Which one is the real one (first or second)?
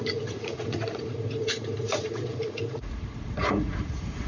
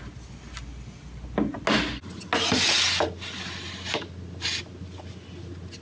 second